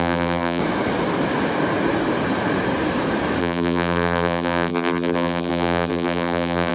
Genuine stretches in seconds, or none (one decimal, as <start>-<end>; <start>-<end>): 0.6-3.4